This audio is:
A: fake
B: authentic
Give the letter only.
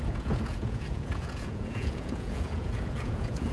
A